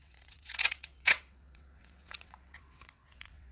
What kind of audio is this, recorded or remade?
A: remade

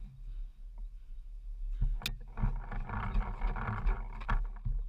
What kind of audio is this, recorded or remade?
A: recorded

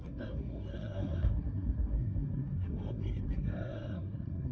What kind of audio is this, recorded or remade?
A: remade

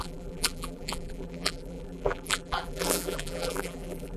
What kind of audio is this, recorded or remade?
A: remade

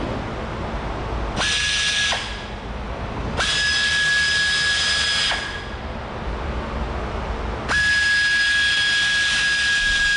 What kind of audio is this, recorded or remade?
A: recorded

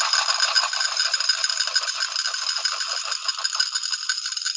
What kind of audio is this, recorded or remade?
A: recorded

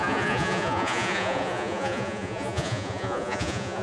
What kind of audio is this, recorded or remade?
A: remade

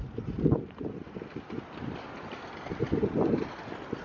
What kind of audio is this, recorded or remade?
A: remade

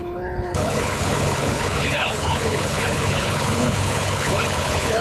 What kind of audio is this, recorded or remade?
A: remade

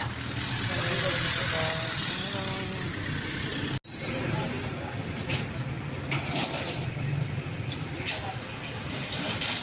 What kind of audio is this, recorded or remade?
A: recorded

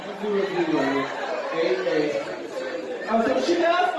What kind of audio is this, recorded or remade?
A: recorded